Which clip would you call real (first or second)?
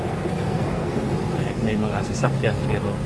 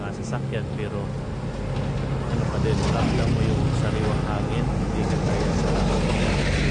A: second